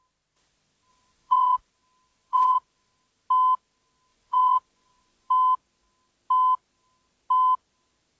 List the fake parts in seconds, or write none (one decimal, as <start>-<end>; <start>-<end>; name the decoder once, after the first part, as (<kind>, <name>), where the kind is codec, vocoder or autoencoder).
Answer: 0.9-1.7 (vocoder, Vocos); 2.1-2.9; 4.1-5.3